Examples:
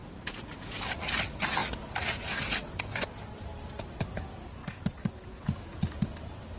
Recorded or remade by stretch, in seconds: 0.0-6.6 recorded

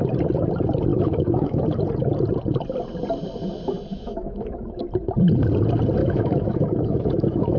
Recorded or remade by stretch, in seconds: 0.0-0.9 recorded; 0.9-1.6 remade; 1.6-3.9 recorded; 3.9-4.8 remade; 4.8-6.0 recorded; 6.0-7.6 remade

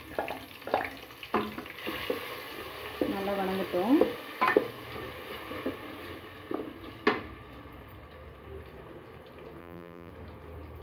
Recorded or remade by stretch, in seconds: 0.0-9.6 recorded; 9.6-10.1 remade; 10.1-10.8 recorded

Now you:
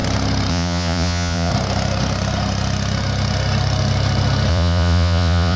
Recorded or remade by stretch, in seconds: 0.0-0.5 recorded; 0.5-1.5 remade; 1.5-4.5 recorded; 4.5-5.6 remade